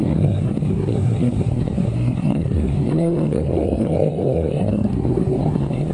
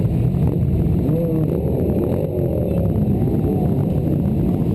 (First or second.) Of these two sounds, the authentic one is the second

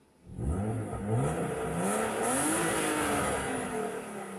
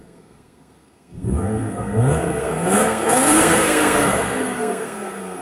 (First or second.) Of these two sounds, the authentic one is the first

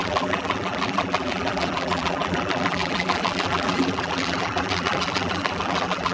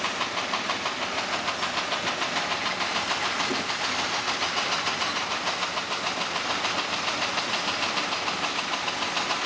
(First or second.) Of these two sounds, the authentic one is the second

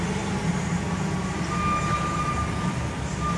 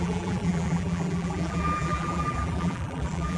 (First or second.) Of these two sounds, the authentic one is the first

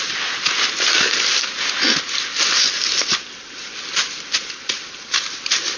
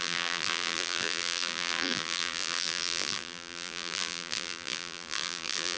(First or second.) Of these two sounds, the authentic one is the first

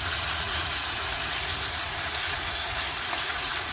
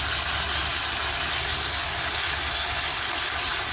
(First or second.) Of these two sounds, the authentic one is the second